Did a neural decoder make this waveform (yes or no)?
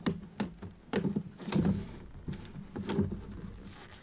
no